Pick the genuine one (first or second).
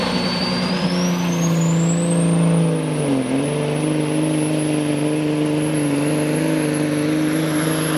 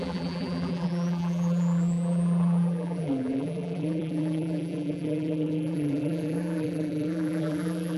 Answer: first